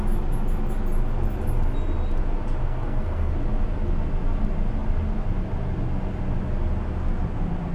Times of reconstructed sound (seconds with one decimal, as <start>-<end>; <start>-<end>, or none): 2.6-3.3